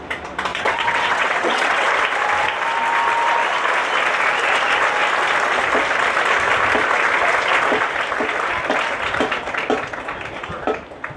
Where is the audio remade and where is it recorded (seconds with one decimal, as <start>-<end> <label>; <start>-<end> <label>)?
0.0-0.5 recorded; 0.5-1.9 remade; 1.9-11.2 recorded